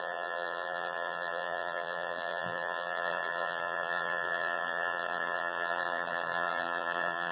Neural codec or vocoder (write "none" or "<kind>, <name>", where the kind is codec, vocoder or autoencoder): vocoder, BigVGAN v2